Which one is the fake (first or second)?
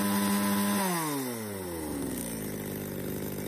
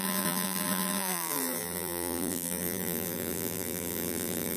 second